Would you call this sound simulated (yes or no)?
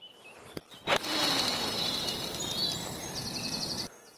no